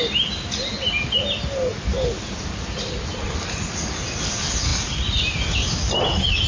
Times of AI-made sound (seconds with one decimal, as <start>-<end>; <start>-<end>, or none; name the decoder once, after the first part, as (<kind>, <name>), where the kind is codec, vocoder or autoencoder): none